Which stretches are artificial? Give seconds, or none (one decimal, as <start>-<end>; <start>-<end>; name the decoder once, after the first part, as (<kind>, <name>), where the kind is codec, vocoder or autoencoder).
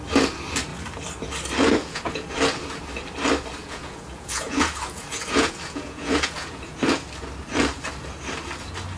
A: 1.8-2.3 (vocoder, Vocos); 3.6-6.8